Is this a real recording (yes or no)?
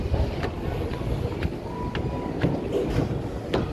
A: yes